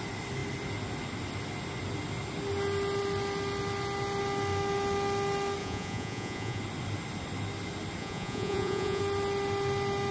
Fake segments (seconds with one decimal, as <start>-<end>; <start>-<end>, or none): 5.6-6.6; 8.0-9.0